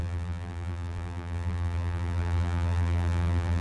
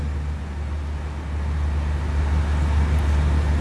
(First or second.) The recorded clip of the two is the second